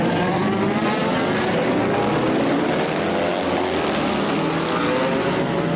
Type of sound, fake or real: real